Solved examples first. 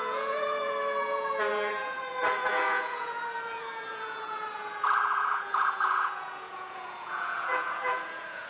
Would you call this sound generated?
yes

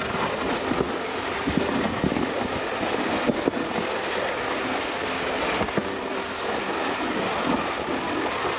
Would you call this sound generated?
no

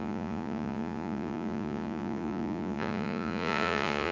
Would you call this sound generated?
yes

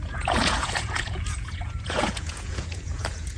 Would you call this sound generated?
yes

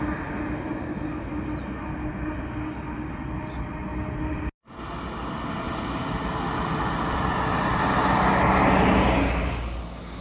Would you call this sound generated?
no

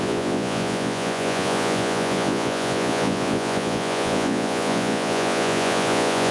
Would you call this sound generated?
yes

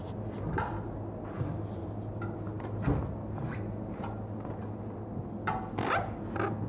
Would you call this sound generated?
no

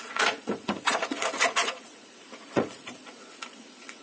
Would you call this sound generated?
yes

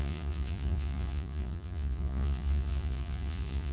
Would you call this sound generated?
yes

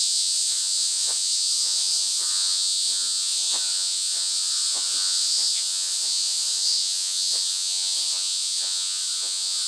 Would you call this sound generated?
yes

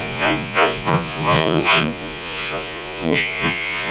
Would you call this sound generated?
yes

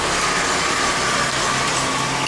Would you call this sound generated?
no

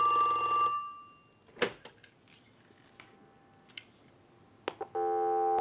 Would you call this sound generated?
no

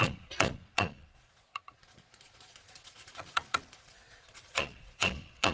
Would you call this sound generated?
yes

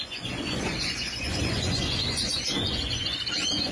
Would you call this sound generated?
yes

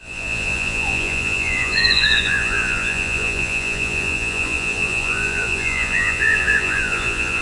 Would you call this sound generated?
yes